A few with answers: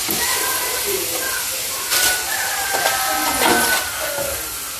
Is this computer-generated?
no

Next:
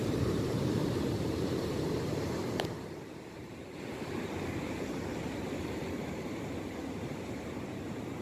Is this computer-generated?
yes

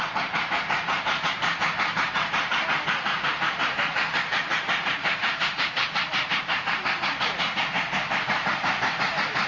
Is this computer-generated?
yes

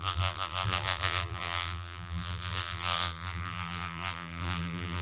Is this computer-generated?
yes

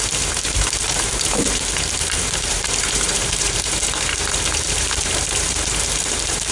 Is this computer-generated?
yes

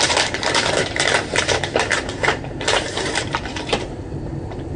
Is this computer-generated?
yes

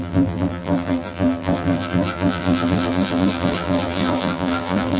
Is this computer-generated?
yes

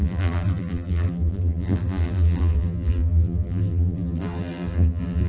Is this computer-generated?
yes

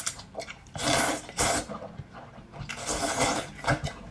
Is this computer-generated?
yes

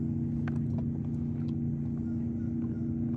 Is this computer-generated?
no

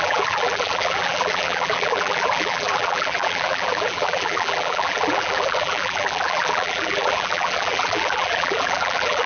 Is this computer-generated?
yes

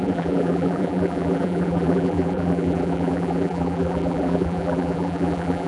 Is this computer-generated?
yes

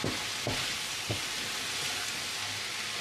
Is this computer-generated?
no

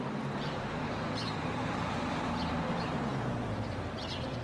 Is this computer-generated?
yes